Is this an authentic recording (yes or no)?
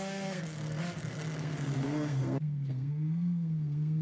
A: no